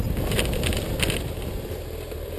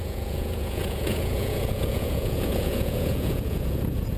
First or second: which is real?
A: first